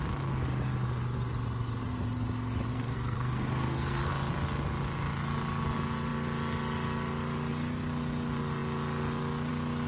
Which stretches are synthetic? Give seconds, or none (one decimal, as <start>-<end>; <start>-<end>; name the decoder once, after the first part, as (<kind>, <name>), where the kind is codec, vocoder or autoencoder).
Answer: 2.7-4.1 (codec, SNAC)